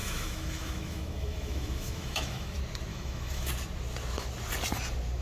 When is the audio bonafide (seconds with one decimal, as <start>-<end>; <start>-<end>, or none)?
2.5-2.9; 3.5-5.2